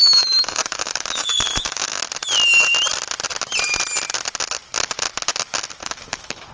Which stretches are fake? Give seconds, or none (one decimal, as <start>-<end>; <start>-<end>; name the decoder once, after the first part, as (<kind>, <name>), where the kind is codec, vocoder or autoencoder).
0.0-2.0 (autoencoder, DAC-VAE); 5.8-6.5

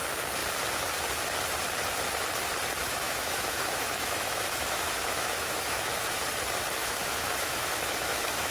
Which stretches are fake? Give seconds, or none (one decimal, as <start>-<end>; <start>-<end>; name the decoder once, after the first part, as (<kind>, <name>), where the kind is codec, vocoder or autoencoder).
2.8-6.2 (autoencoder, DAC-VAE); 6.8-8.5

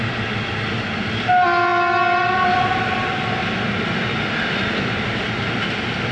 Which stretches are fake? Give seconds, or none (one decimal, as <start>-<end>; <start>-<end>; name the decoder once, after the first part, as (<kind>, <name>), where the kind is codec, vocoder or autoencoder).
none

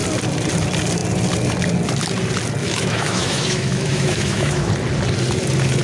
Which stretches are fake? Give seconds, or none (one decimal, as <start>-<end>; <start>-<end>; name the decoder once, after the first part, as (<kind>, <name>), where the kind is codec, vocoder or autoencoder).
2.6-4.7 (autoencoder, DAC-VAE)

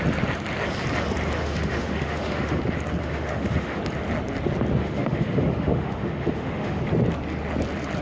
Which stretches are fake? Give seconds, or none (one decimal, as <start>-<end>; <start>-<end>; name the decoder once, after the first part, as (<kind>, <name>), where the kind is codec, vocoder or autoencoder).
1.4-2.6 (autoencoder, DAC-VAE); 3.0-3.8; 4.8-6.8